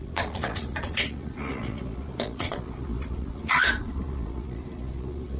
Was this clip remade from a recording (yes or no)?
yes